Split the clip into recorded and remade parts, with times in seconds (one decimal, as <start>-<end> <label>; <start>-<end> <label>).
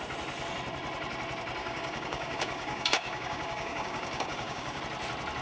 0.0-1.6 recorded; 1.6-4.8 remade; 4.8-5.4 recorded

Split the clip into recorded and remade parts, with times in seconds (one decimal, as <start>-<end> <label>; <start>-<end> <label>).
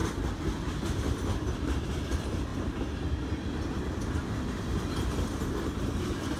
0.0-6.4 recorded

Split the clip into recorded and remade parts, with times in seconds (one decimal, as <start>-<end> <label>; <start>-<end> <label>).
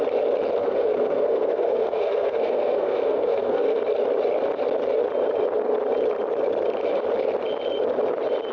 0.0-0.6 recorded; 0.6-3.8 remade; 3.8-8.5 recorded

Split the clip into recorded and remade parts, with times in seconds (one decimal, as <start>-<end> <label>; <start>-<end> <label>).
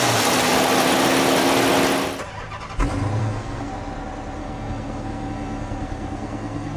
0.0-3.2 recorded; 3.2-3.7 remade; 3.7-4.4 recorded; 4.4-6.8 remade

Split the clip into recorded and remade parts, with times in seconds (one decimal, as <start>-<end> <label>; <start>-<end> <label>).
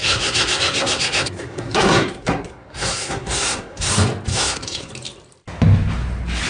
0.0-3.9 remade; 3.9-4.3 recorded; 4.3-4.9 remade; 4.9-6.5 recorded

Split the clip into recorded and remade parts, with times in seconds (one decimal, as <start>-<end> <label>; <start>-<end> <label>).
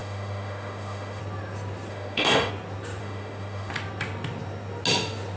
0.0-1.2 remade; 1.2-1.9 recorded; 1.9-2.5 remade; 2.5-3.0 recorded; 3.0-3.7 remade; 3.7-5.4 recorded